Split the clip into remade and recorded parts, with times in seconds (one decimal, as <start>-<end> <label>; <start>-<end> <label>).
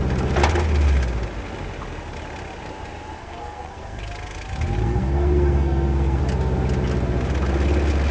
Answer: 0.0-3.2 recorded; 3.2-4.0 remade; 4.0-4.8 recorded; 4.8-6.2 remade; 6.2-8.1 recorded